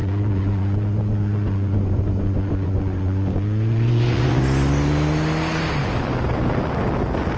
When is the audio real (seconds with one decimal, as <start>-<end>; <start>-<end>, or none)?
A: 4.4-7.4